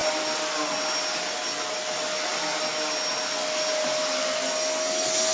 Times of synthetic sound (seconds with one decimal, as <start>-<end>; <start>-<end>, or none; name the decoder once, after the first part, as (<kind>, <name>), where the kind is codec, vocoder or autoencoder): none